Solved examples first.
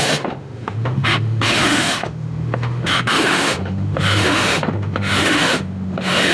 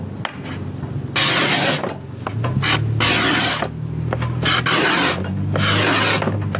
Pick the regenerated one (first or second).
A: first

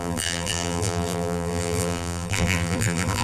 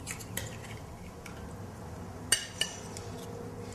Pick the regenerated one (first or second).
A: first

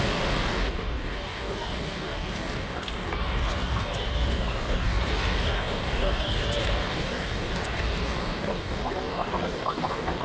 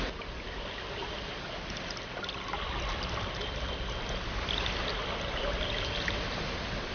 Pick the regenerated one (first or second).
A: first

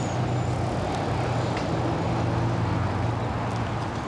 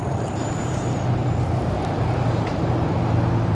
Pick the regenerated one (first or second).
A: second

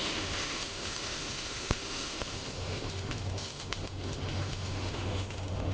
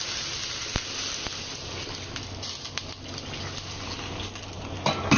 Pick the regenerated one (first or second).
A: first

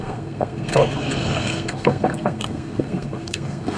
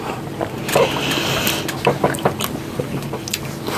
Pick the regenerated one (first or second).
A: first